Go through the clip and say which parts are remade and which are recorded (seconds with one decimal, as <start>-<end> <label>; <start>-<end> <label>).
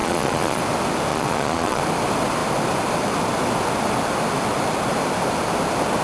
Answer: 0.0-0.6 remade; 0.6-1.1 recorded; 1.1-1.8 remade; 1.8-6.0 recorded